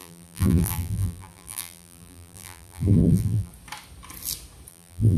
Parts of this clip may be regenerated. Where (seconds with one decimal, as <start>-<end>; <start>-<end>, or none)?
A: 0.0-3.5; 4.7-5.2